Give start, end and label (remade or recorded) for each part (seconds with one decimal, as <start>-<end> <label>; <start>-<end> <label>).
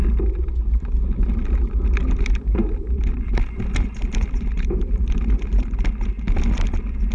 0.0-2.0 recorded; 2.0-5.9 remade; 5.9-7.1 recorded